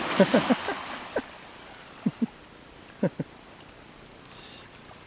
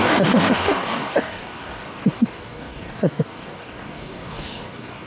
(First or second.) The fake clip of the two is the second